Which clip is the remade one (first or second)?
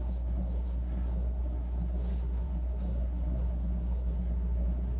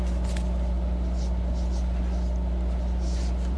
first